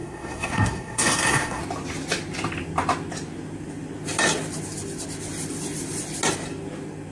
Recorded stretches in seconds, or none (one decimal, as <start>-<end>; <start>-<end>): 1.6-7.1